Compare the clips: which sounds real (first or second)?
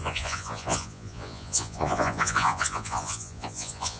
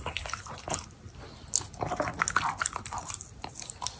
second